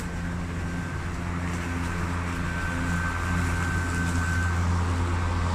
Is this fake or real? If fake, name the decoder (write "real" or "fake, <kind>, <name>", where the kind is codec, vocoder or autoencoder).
real